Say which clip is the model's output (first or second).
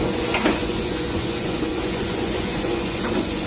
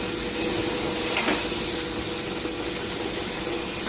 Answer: first